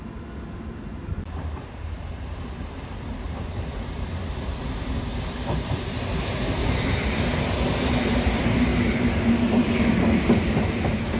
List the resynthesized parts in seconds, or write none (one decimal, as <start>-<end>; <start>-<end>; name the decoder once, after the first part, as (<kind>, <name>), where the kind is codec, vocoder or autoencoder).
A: 1.1-5.9 (vocoder, BigVGAN v2); 6.6-7.2; 8.7-9.8